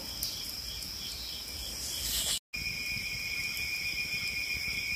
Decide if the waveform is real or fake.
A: real